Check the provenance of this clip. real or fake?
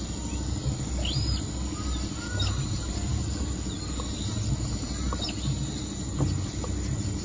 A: real